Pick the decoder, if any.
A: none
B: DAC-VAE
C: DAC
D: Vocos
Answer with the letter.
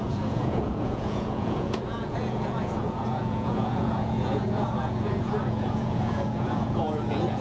D